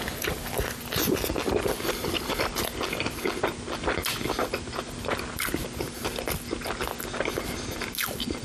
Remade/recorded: recorded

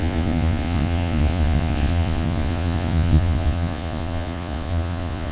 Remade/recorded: remade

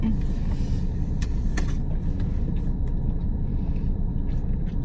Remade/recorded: recorded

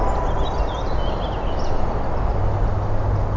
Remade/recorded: recorded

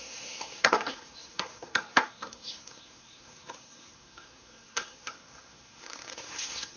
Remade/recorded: remade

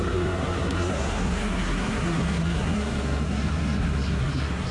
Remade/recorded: remade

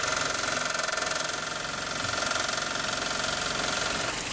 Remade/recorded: recorded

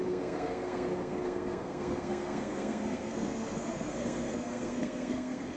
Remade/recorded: remade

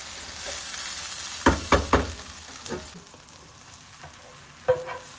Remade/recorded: recorded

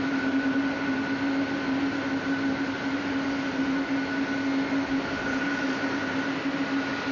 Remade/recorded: recorded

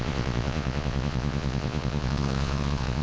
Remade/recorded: remade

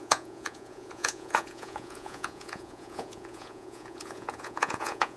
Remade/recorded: remade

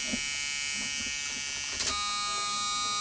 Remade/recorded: recorded